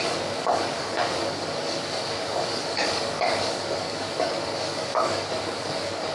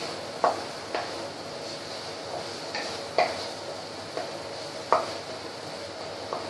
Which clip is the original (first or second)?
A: second